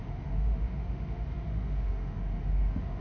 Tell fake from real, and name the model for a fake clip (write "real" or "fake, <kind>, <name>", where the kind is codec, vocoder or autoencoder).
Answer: fake, autoencoder, DAC-VAE